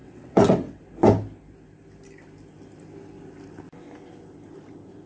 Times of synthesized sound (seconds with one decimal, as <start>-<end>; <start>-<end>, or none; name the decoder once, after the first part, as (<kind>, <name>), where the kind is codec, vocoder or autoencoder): 0.0-0.8 (vocoder, WaveNeXt)